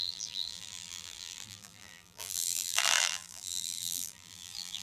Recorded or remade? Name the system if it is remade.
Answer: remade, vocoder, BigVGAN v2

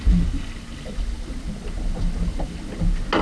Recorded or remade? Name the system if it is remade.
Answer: recorded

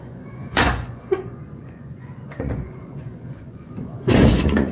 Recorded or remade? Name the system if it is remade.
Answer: remade, vocoder, Vocos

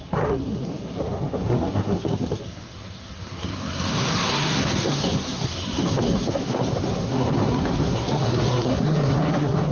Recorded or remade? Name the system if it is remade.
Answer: remade, codec, SNAC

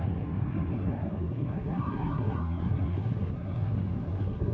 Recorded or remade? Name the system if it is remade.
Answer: remade, codec, SNAC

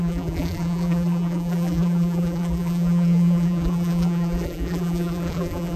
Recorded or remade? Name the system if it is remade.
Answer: remade, vocoder, BigVGAN v2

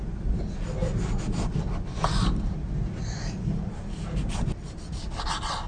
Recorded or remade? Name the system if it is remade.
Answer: recorded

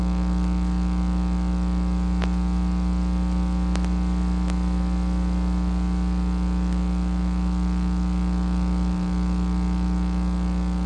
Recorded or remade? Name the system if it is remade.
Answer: recorded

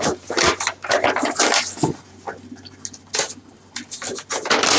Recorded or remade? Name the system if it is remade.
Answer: recorded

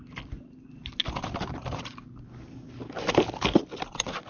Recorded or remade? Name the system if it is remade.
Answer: recorded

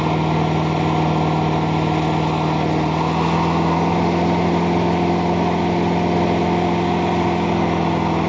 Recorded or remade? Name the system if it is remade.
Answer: recorded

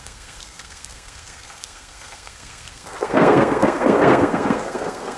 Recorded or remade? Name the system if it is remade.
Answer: remade, codec, SNAC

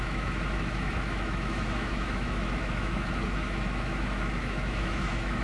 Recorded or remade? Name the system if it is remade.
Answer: remade, autoencoder, DAC-VAE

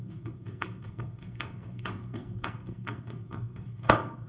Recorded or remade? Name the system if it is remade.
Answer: remade, codec, SNAC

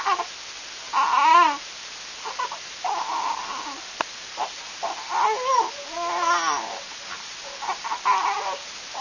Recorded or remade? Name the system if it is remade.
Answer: recorded